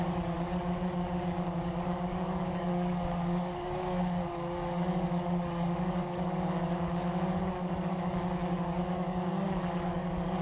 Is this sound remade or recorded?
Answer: remade